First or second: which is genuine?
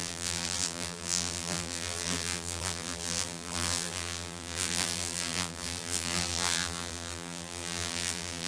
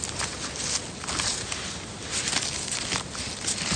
second